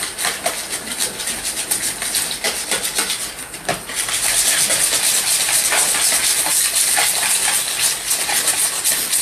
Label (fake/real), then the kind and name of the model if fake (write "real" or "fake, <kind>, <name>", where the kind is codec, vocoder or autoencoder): real